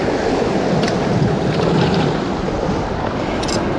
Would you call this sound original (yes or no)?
yes